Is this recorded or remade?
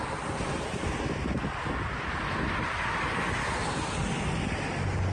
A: recorded